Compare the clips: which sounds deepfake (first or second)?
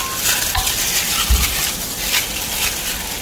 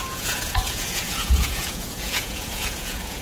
second